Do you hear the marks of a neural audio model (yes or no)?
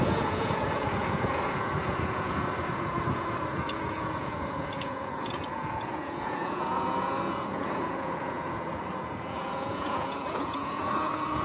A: yes